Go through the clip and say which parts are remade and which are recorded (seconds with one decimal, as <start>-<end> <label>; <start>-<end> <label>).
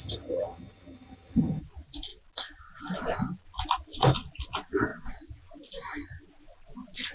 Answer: 0.0-1.6 remade; 1.6-7.1 recorded